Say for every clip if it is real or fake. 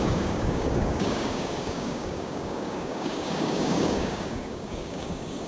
fake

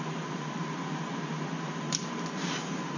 real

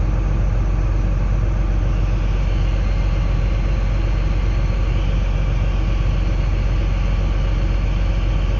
real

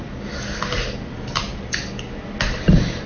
real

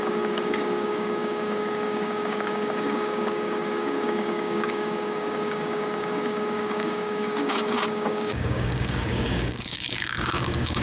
fake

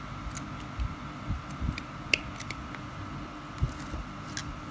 real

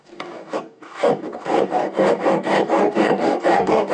fake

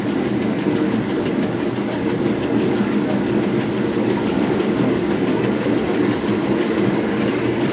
fake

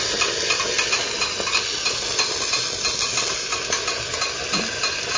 real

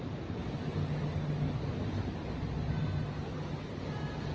real